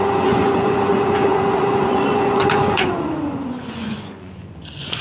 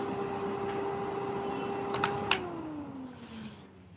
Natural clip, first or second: second